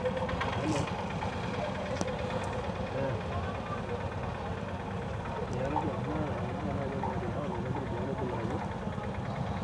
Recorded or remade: recorded